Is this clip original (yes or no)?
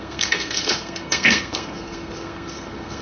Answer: no